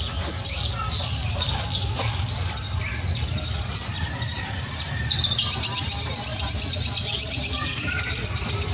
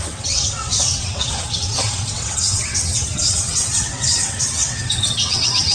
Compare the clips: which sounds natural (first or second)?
first